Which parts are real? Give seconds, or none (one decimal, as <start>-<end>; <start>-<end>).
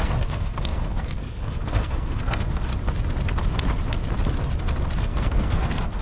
2.7-5.0